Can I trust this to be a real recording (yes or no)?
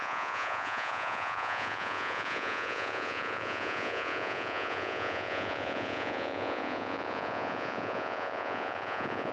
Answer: no